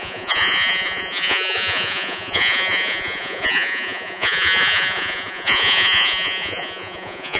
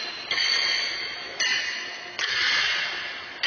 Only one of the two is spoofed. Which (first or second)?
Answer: first